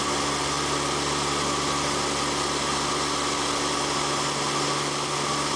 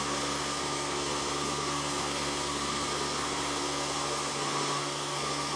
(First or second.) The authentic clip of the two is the first